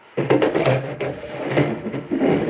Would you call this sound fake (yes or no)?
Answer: yes